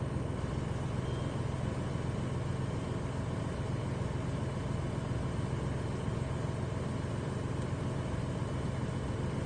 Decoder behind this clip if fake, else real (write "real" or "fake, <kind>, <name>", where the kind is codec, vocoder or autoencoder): real